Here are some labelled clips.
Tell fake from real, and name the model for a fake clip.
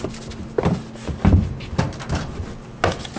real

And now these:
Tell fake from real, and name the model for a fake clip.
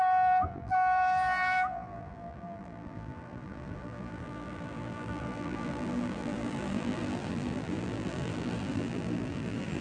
fake, vocoder, BigVGAN v2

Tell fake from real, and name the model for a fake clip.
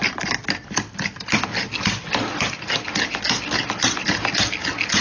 real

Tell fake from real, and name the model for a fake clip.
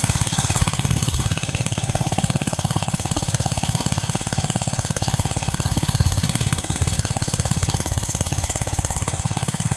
fake, codec, SNAC